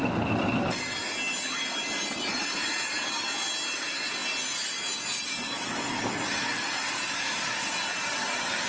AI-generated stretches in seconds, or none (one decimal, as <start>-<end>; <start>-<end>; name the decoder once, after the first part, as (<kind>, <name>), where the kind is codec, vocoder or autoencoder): none